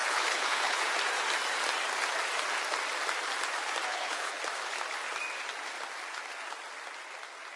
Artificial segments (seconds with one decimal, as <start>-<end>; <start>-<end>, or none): 0.0-0.8; 3.9-4.4